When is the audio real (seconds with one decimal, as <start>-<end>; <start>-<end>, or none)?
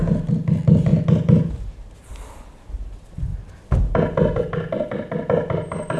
0.0-6.0